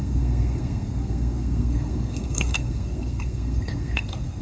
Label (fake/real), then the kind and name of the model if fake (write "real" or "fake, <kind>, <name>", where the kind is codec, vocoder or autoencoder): fake, codec, SNAC